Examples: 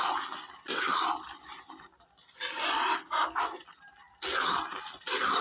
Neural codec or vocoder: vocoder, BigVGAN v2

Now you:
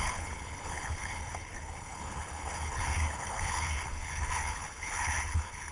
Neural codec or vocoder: codec, HILCodec